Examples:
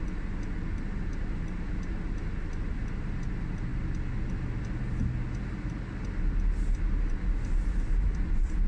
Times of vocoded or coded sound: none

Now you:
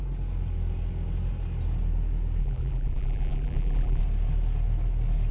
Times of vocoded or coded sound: 2.4-4.0 (vocoder, BigVGAN v2)

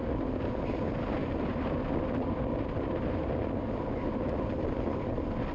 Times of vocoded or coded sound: 1.2-1.7 (vocoder, BigVGAN v2)

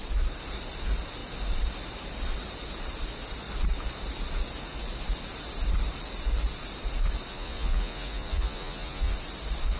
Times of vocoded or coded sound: 7.3-9.1 (vocoder, Vocos)

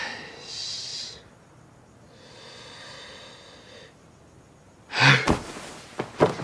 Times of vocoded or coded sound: 0.9-2.2 (vocoder, BigVGAN v2)

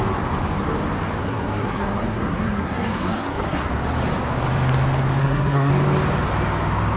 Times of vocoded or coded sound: 1.2-3.7 (codec, SNAC); 5.2-5.7

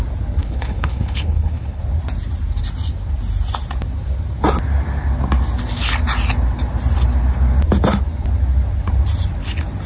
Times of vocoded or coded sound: 0.4-1.8 (codec, HILCodec)

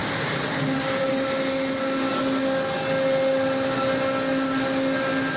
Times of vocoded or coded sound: none